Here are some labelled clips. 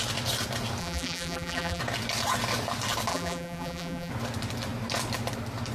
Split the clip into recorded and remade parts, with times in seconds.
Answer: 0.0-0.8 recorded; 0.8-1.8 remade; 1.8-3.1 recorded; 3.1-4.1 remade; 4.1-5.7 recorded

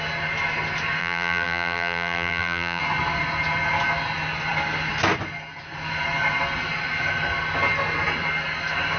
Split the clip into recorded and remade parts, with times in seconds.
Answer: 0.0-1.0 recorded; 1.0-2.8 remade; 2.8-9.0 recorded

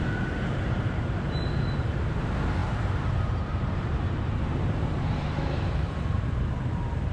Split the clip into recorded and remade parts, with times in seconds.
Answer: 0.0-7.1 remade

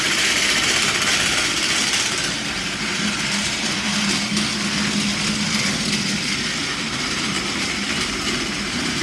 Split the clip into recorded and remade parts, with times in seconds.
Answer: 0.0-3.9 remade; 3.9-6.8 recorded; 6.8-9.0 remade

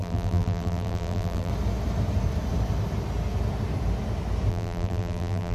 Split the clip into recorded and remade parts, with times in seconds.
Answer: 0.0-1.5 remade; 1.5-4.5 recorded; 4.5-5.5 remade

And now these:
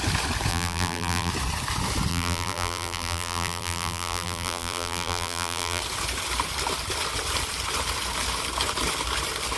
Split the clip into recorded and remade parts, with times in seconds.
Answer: 0.0-0.5 recorded; 0.5-1.3 remade; 1.3-2.1 recorded; 2.1-5.8 remade; 5.8-9.6 recorded